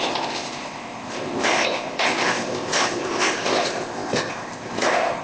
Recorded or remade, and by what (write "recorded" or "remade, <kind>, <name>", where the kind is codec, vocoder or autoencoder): remade, codec, ZipCodec